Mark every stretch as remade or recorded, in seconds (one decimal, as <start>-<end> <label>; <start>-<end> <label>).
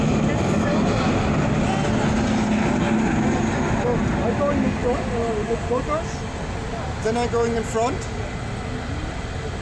0.0-9.6 recorded